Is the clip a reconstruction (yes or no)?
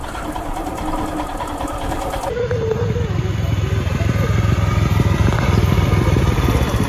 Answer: no